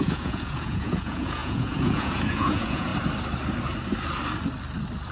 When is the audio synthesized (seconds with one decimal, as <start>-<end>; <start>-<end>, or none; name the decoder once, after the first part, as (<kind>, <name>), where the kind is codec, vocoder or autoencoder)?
0.0-2.9 (vocoder, Vocos)

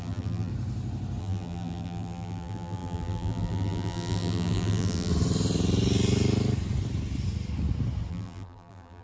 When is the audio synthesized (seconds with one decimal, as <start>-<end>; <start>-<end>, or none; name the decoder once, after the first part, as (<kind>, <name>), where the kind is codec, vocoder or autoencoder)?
0.0-0.5 (vocoder, BigVGAN v2); 1.2-5.1; 8.1-9.0

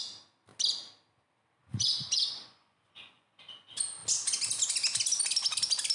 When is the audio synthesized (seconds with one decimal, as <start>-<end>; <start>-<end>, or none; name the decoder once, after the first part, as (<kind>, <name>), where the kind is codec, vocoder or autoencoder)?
1.7-3.4 (vocoder, Vocos)

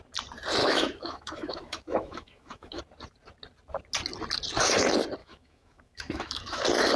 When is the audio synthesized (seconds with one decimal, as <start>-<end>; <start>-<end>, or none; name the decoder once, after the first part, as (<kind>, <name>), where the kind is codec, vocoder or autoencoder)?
0.6-2.8 (autoencoder, DAC-VAE); 5.2-6.6

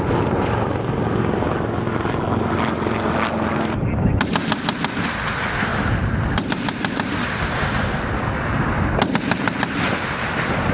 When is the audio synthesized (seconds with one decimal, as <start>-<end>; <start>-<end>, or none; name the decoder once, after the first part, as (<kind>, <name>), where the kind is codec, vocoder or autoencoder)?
5.7-8.7 (vocoder, BigVGAN v2)